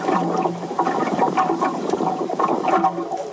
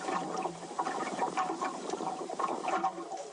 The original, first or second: first